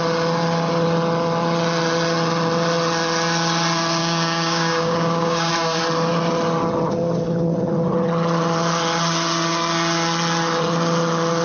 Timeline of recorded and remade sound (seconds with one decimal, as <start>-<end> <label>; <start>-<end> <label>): 0.0-4.0 recorded; 4.0-5.5 remade; 5.5-11.4 recorded